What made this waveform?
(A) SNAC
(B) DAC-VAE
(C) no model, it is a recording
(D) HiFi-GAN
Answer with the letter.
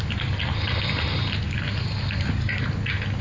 C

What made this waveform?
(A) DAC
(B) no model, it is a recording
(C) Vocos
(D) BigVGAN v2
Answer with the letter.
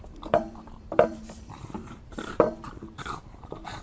D